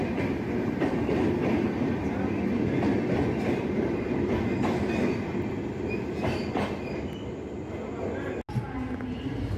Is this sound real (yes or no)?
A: yes